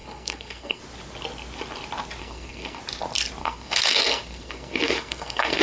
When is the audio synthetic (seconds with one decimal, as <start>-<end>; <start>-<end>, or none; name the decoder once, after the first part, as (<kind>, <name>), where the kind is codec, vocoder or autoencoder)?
0.0-0.8 (codec, SNAC); 2.2-2.8; 3.4-5.6